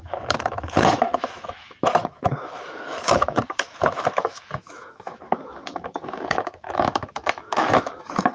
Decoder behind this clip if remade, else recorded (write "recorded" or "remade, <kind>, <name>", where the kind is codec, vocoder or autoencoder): remade, autoencoder, DAC-VAE